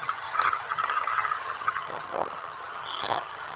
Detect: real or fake fake